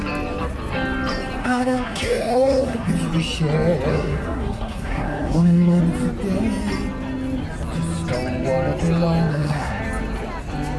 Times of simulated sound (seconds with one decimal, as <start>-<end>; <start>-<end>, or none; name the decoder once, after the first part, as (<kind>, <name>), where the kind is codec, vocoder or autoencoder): 1.4-2.9 (codec, SNAC); 3.9-5.8; 9.3-9.8